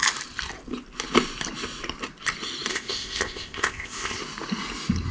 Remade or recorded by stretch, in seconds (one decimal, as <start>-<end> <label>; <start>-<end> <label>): 0.0-2.7 recorded; 2.7-4.2 remade; 4.2-5.1 recorded